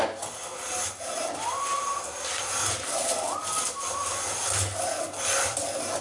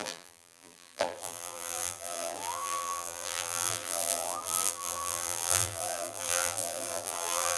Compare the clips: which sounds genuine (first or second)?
first